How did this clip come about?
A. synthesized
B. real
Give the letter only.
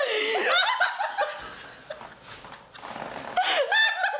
B